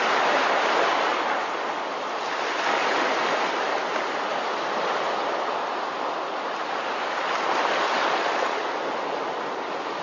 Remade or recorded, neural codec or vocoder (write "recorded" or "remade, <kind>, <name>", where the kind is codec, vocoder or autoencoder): recorded